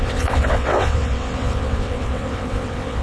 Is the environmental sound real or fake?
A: fake